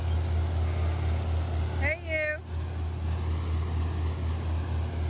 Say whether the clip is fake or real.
real